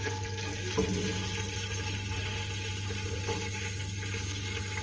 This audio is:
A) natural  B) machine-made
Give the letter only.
A